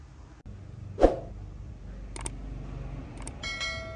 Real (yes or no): yes